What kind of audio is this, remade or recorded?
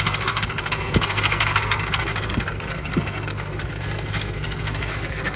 remade